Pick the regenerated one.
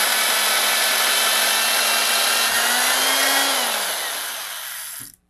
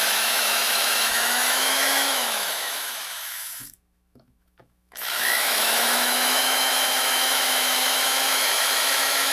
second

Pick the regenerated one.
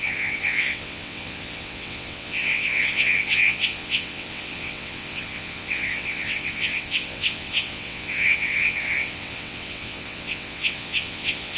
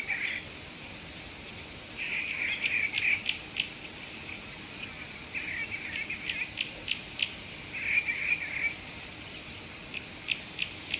first